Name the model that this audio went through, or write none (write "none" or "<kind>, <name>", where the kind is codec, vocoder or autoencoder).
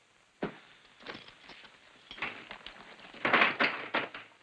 none